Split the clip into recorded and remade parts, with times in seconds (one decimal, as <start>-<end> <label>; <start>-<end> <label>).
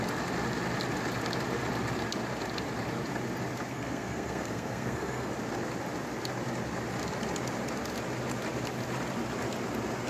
0.0-3.7 recorded; 3.7-5.3 remade; 5.3-10.1 recorded